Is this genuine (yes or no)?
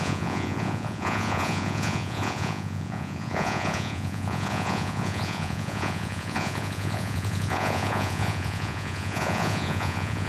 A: no